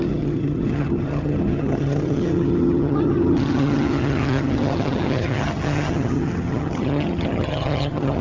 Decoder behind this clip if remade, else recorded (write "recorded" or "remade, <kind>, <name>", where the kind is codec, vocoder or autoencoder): remade, vocoder, HiFi-GAN